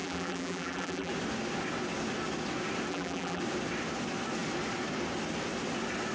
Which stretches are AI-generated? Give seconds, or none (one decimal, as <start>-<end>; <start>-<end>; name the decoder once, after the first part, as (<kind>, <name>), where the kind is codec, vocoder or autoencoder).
0.0-1.1 (vocoder, BigVGAN v2); 2.9-3.4